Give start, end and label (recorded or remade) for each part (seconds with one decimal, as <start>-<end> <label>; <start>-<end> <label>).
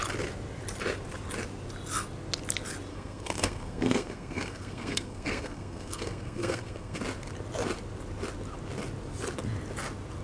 0.0-2.9 recorded; 2.9-7.0 remade; 7.0-10.2 recorded